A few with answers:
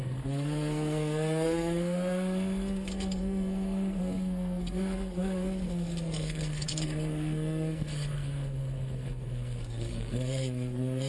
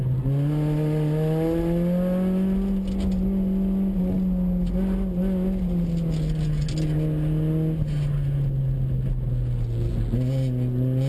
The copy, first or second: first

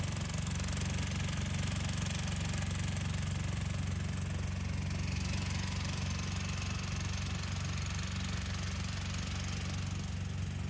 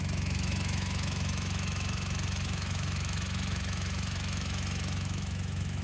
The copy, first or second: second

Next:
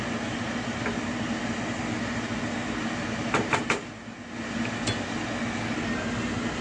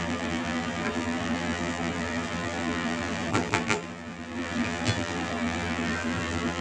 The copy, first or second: second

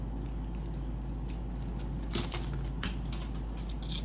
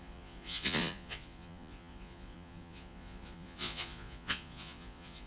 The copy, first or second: second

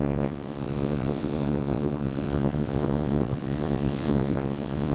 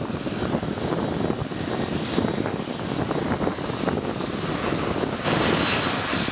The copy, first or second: first